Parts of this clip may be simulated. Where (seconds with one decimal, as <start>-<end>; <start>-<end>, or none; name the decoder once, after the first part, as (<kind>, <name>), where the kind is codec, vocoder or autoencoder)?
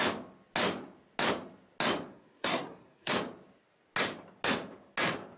2.1-3.1 (codec, SNAC)